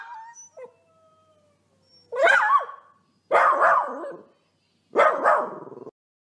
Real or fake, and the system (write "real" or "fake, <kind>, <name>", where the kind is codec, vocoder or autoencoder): real